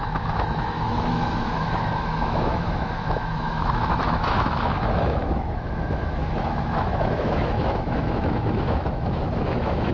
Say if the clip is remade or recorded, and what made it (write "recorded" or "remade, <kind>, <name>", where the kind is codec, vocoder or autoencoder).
remade, autoencoder, DAC-VAE